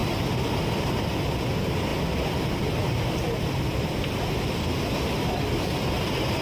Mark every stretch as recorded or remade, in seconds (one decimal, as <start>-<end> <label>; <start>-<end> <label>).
0.0-1.4 remade; 1.4-1.9 recorded; 1.9-5.7 remade; 5.7-6.4 recorded